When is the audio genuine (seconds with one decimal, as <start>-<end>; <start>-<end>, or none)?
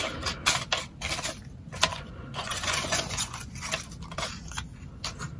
0.0-1.9; 3.5-5.4